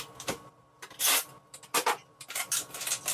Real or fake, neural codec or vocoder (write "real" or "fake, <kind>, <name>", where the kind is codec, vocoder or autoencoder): real